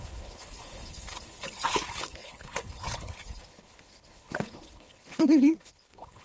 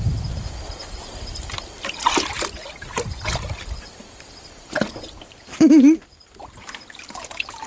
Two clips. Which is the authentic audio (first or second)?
second